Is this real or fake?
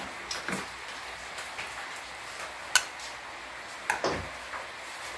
real